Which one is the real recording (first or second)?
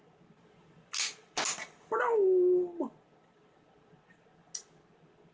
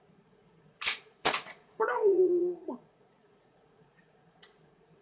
first